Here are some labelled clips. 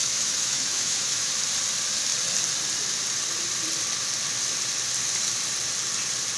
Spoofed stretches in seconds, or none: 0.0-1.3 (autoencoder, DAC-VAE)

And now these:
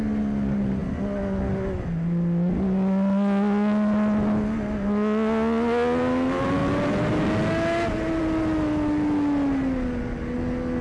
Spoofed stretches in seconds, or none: none